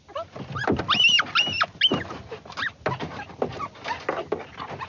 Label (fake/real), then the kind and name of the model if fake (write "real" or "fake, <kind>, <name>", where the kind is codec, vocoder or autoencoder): real